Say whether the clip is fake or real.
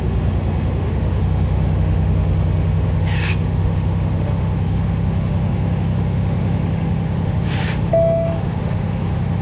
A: fake